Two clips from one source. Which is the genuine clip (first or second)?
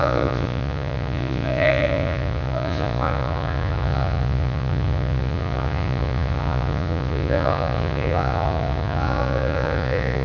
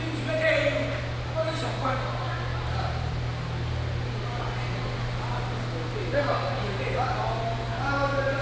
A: second